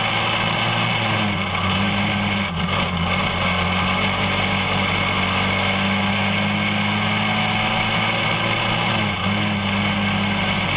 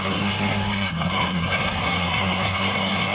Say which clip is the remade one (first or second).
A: second